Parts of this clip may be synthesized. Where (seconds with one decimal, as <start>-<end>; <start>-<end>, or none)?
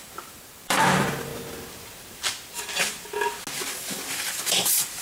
0.0-1.3; 4.3-5.0